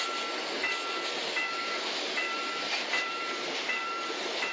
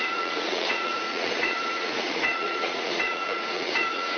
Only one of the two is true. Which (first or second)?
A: first